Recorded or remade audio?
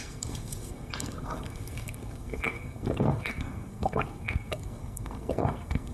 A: remade